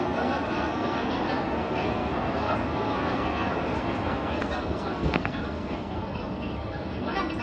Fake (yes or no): yes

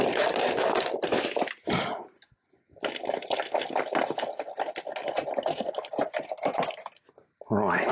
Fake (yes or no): no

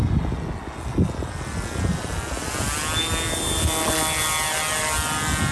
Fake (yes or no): no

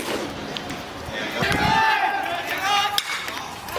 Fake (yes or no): no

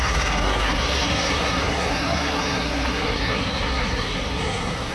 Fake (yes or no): yes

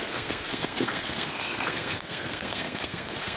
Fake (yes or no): yes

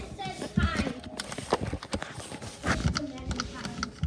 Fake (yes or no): no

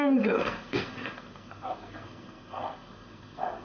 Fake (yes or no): yes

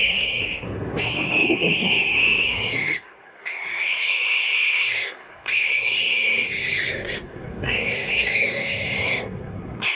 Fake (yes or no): yes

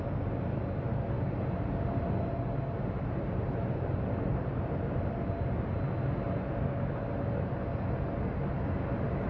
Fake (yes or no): no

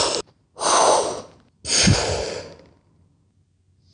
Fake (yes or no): no